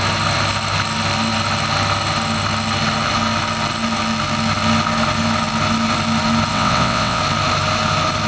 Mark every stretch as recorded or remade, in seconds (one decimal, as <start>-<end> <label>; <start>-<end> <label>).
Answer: 0.0-6.5 recorded; 6.5-7.2 remade; 7.2-8.3 recorded